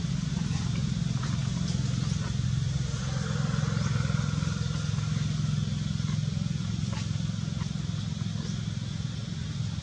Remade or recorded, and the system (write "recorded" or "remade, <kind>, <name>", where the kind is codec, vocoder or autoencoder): recorded